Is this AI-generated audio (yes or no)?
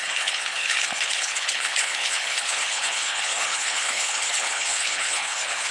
yes